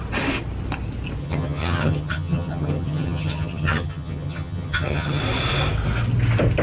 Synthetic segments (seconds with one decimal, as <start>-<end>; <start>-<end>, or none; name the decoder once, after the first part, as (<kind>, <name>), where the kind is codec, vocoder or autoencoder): 1.2-5.2 (vocoder, HiFi-GAN)